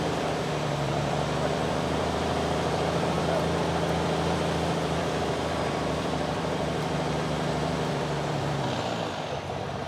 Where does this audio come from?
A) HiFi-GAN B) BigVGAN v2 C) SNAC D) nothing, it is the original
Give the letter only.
B